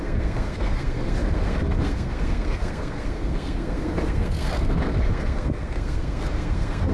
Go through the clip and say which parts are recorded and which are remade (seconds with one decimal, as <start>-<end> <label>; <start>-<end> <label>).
0.0-6.9 remade

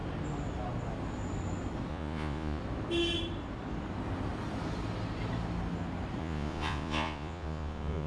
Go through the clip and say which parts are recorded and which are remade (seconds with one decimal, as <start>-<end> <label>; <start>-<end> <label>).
0.0-1.9 recorded; 1.9-2.6 remade; 2.6-6.2 recorded; 6.2-8.1 remade

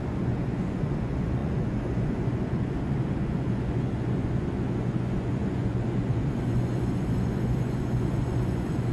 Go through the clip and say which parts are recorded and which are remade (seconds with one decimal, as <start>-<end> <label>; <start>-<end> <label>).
0.0-8.9 remade

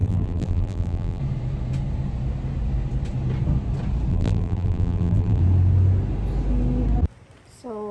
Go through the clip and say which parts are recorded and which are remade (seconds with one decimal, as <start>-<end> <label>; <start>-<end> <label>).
0.0-1.2 remade; 1.2-4.1 recorded; 4.1-5.4 remade; 5.4-7.9 recorded

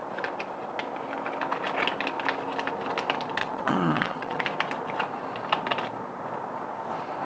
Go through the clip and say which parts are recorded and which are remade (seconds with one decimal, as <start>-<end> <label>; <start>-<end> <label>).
0.0-3.4 recorded; 3.4-4.4 remade; 4.4-7.2 recorded

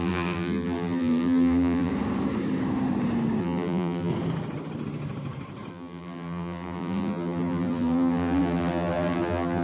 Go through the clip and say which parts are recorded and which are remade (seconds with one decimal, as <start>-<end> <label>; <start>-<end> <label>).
0.0-1.9 remade; 1.9-3.4 recorded; 3.4-4.1 remade; 4.1-5.7 recorded; 5.7-9.6 remade

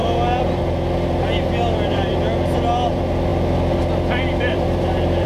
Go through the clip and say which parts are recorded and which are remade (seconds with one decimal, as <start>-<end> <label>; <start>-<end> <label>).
0.0-2.1 remade; 2.1-2.9 recorded; 2.9-5.3 remade